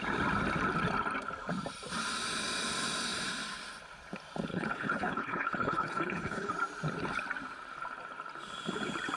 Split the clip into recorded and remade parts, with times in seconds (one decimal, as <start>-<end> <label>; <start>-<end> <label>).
0.0-4.5 recorded; 4.5-6.5 remade; 6.5-9.2 recorded